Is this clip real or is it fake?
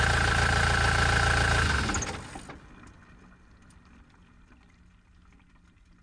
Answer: real